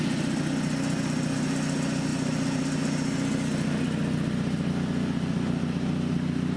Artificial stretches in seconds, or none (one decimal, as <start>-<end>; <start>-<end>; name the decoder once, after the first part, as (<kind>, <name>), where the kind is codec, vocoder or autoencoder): none